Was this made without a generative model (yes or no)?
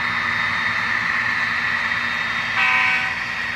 yes